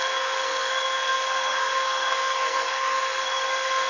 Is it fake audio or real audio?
fake